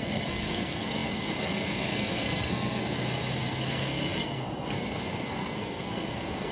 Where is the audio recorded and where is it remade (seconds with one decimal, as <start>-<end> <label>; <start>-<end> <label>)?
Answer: 0.0-6.5 remade